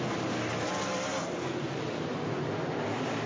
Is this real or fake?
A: real